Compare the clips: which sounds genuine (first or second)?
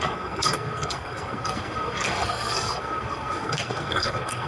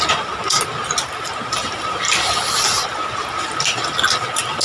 second